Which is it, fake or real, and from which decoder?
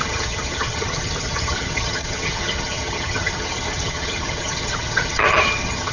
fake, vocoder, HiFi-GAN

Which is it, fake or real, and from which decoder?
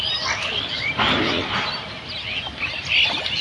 real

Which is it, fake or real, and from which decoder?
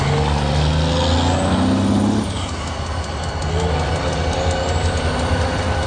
real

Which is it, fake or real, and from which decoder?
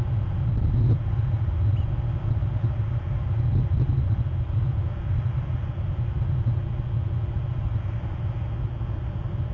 real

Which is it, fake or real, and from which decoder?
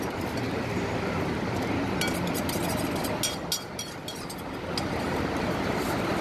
real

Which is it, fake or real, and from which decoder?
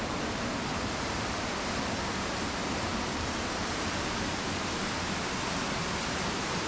fake, vocoder, BigVGAN v2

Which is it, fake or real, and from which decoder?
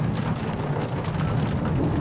real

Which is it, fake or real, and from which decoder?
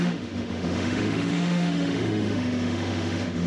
fake, autoencoder, DAC-VAE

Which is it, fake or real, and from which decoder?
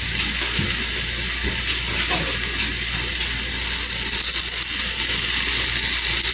real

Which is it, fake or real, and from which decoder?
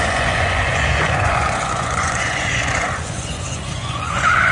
fake, vocoder, Vocos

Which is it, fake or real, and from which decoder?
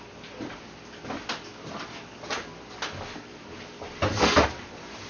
real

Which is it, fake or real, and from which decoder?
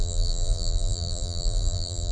fake, vocoder, BigVGAN v2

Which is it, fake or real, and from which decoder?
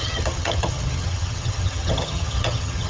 fake, vocoder, HiFi-GAN